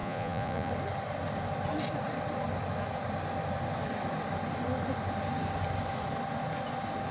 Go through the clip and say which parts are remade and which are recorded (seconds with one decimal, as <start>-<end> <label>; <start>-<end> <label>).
0.0-0.7 remade; 0.7-7.1 recorded